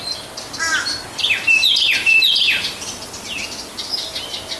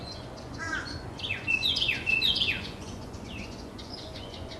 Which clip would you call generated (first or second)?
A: second